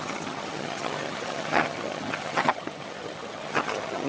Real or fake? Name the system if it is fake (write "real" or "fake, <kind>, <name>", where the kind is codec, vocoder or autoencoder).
fake, vocoder, HiFi-GAN